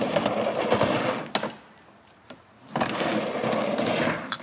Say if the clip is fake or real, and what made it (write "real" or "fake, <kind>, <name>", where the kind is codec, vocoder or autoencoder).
real